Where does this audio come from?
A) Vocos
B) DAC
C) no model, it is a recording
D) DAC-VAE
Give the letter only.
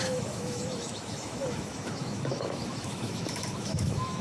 D